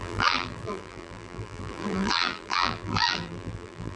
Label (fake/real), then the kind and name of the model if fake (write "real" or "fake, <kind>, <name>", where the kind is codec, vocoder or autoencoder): fake, vocoder, BigVGAN v2